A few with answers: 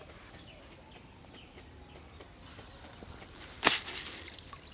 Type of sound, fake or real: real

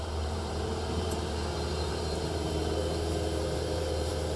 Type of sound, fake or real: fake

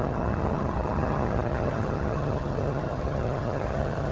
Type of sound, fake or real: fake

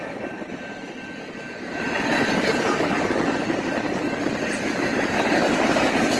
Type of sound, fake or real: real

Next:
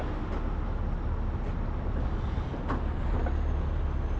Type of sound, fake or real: real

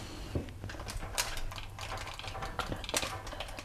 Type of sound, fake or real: real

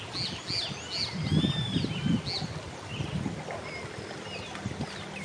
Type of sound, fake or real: real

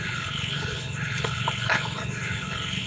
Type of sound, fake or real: fake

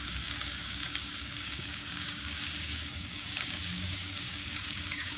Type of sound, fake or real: fake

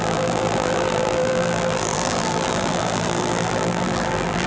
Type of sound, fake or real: fake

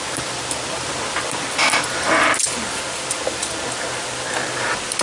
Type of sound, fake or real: real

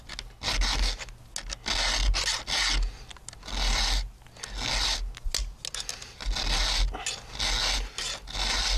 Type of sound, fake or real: real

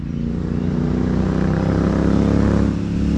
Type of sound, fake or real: real